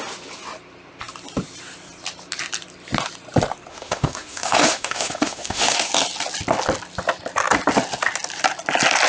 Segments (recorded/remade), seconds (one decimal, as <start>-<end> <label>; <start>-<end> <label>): 0.0-3.7 recorded; 3.7-5.9 remade; 5.9-9.1 recorded